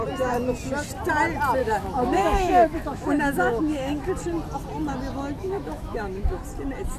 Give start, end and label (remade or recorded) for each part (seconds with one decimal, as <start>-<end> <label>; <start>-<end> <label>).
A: 0.0-1.6 recorded; 1.6-4.1 remade; 4.1-5.4 recorded; 5.4-6.4 remade; 6.4-7.0 recorded